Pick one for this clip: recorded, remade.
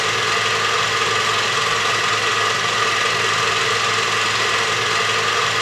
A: recorded